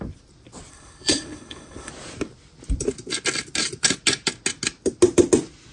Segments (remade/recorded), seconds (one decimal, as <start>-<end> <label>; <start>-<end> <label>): 0.0-0.7 recorded; 0.7-1.9 remade; 1.9-5.7 recorded